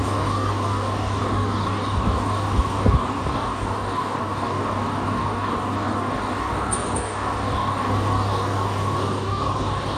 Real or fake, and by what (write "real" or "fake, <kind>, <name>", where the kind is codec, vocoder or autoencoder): fake, codec, DAC